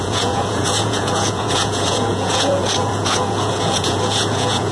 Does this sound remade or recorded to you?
remade